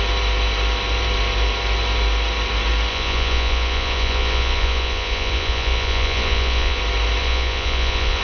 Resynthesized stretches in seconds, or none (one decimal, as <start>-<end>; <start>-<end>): 2.9-6.8; 7.2-8.2